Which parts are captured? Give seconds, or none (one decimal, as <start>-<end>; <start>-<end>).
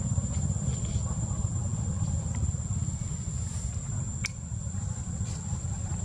0.0-6.0